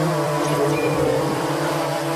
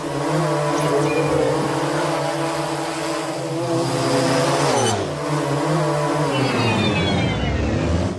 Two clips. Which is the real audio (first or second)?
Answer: second